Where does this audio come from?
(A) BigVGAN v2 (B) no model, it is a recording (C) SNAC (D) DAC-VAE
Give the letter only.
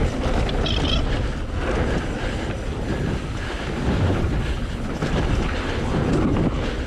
B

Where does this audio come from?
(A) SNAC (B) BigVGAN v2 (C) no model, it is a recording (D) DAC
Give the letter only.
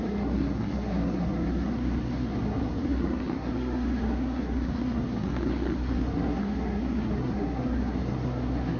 A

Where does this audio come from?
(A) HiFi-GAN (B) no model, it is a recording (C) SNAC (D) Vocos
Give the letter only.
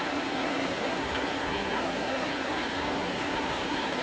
C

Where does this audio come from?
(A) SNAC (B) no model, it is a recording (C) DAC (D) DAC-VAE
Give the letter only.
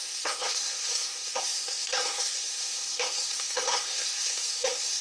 A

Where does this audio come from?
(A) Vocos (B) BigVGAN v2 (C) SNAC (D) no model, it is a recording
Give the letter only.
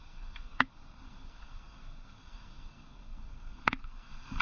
C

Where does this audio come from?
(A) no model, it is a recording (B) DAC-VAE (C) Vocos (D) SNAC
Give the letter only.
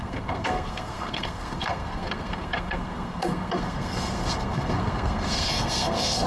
D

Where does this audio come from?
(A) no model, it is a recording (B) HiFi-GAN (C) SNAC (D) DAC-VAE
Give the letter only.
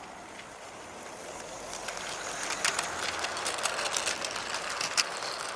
A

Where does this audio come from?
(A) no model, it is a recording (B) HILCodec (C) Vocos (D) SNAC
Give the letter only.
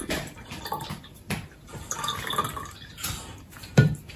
A